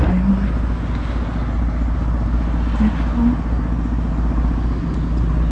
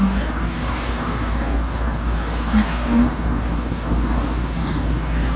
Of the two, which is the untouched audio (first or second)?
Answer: first